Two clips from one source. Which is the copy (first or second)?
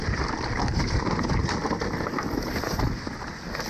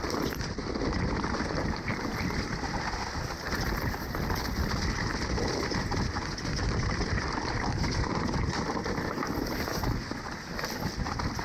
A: second